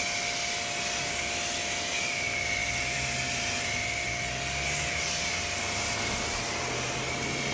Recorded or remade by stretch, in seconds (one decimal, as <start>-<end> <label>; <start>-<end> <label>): 0.0-7.5 recorded